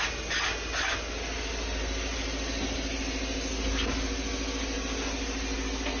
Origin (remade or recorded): recorded